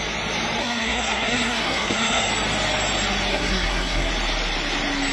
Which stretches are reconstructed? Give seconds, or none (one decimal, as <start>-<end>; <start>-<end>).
0.6-2.3; 3.3-4.1